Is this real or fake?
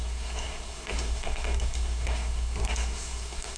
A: fake